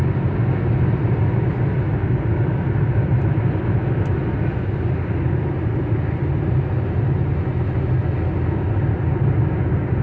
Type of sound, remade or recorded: recorded